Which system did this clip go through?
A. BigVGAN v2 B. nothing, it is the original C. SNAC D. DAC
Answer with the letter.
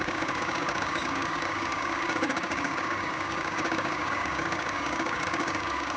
D